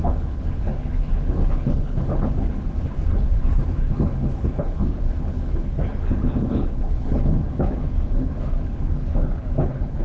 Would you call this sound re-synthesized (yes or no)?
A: yes